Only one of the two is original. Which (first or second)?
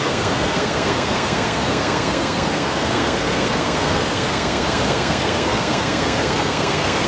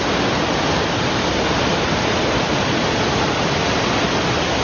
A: second